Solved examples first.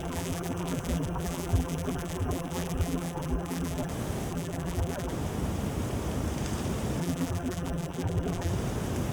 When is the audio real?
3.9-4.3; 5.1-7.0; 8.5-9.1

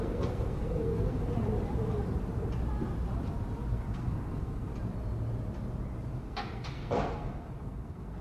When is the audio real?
1.3-3.7; 4.7-6.2